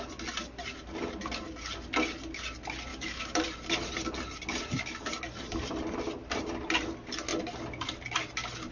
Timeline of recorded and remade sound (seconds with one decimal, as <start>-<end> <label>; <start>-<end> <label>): 0.0-2.9 recorded; 2.9-3.4 remade; 3.4-8.7 recorded